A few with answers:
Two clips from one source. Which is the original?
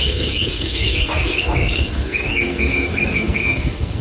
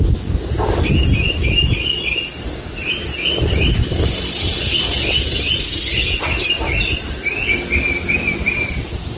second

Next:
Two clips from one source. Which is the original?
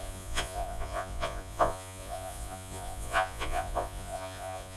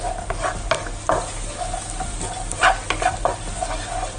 second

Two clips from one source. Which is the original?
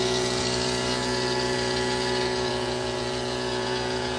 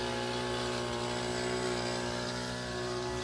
second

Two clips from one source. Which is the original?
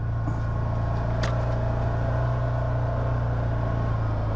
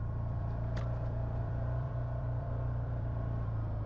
first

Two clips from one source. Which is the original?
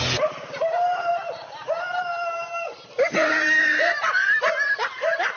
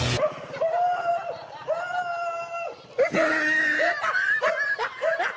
second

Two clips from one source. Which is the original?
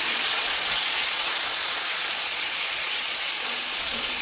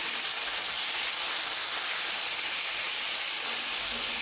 second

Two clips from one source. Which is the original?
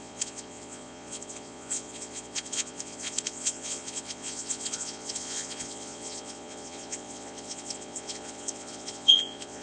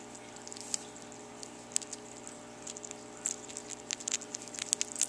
second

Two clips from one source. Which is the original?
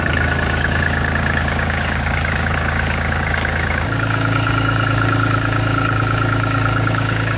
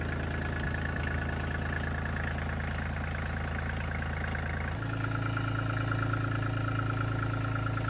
second